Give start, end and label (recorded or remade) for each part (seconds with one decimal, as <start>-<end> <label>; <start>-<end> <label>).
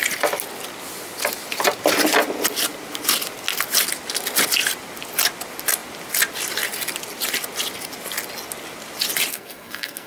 0.0-9.3 recorded; 9.3-10.1 remade